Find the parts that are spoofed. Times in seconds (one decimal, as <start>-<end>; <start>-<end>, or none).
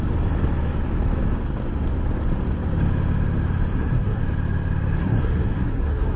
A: 3.7-4.2; 5.0-6.2